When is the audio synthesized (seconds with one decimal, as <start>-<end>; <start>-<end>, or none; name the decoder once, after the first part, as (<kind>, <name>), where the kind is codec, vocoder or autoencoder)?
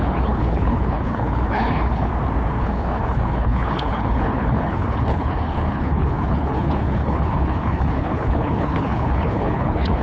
0.0-2.1 (codec, HILCodec); 2.6-10.0